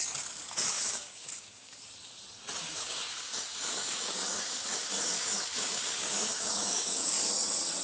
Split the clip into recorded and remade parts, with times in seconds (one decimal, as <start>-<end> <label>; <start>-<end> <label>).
0.0-0.6 recorded; 0.6-1.8 remade; 1.8-2.6 recorded; 2.6-7.3 remade; 7.3-7.8 recorded